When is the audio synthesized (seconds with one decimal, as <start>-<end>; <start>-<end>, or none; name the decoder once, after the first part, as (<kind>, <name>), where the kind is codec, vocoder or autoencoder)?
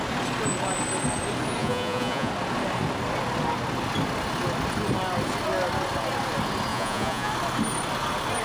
1.6-2.3 (vocoder, Vocos); 6.7-7.3